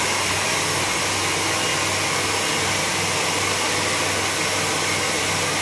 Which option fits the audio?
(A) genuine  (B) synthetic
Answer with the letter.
A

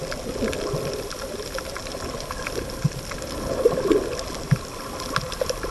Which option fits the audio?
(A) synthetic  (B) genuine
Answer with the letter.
B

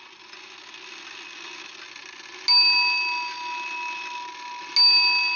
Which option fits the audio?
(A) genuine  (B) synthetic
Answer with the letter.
A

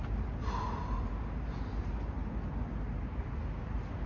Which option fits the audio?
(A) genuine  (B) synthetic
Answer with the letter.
A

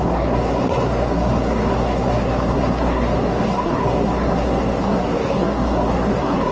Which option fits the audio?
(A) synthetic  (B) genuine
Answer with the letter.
A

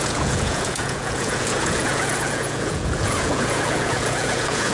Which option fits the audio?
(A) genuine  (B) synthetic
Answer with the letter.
B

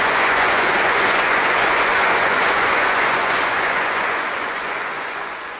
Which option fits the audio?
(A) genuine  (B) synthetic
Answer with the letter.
B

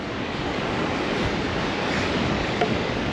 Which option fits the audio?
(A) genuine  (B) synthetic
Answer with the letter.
B